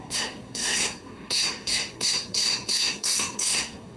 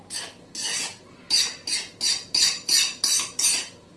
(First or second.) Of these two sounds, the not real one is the first